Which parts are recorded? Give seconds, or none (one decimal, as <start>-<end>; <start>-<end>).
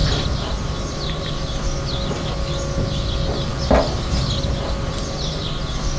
0.0-6.0